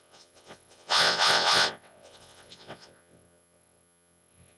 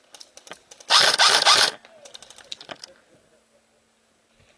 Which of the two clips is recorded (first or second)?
second